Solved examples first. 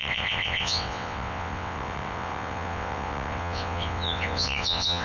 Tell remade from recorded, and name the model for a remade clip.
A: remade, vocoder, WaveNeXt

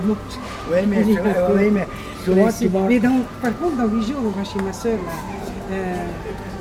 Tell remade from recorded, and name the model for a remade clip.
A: recorded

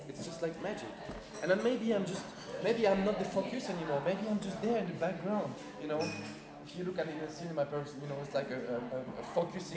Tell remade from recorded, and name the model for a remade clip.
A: recorded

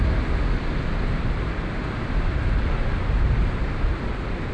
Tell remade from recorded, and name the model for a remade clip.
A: recorded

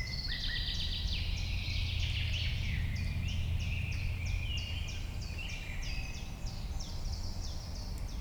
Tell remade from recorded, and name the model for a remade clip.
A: remade, vocoder, BigVGAN v2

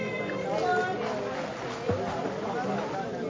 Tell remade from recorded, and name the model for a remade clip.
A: recorded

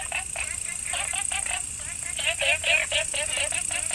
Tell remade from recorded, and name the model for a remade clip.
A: recorded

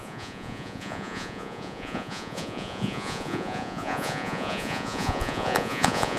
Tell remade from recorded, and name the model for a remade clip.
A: remade, vocoder, Vocos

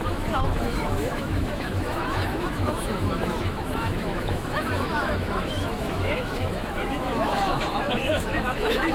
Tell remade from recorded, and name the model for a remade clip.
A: remade, autoencoder, DAC-VAE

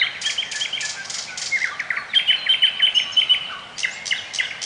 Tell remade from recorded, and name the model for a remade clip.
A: recorded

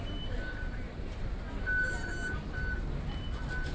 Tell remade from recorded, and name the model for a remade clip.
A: recorded